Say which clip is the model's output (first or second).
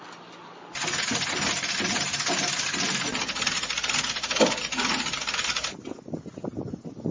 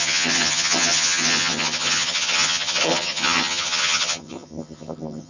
second